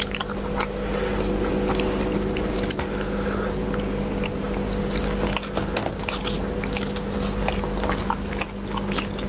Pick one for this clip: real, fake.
real